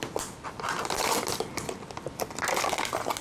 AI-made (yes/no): no